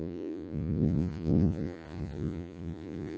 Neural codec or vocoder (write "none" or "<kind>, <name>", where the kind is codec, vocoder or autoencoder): vocoder, Vocos